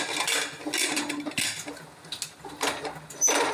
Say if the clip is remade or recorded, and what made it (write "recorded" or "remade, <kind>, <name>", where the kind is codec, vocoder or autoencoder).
recorded